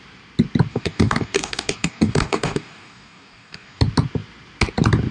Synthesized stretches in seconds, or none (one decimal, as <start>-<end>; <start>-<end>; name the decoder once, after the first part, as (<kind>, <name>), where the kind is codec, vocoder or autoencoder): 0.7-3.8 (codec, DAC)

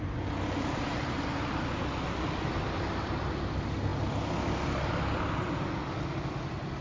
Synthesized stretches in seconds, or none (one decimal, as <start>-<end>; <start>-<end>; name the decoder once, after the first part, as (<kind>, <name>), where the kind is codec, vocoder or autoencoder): none

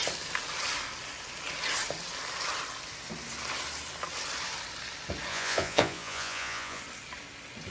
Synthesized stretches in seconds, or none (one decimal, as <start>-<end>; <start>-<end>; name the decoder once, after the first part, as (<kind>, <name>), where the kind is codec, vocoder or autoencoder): 5.3-6.8 (vocoder, Vocos)

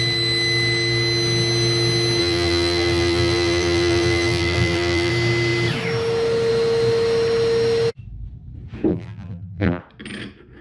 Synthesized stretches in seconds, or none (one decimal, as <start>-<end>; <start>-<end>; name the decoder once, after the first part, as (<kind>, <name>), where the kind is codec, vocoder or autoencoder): 2.2-5.1 (vocoder, BigVGAN v2); 8.9-9.8